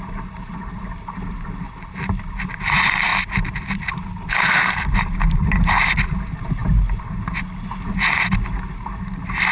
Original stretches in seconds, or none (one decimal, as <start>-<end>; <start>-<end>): 0.0-6.6; 7.3-9.5